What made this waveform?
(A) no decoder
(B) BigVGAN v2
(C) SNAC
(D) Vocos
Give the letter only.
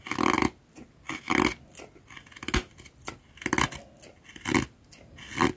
A